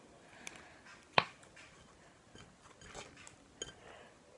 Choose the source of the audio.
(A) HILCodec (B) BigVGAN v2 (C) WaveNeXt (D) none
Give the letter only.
D